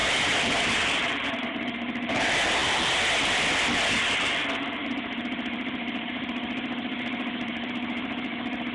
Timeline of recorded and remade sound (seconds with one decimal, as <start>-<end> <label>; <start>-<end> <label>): 0.0-1.1 remade; 1.1-4.8 recorded; 4.8-7.7 remade; 7.7-8.7 recorded